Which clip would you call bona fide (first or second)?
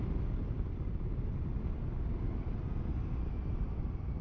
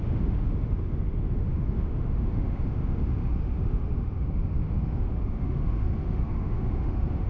first